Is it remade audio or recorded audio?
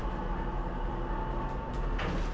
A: recorded